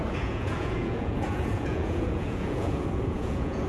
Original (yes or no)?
no